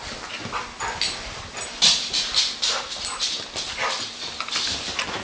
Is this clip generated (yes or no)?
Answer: no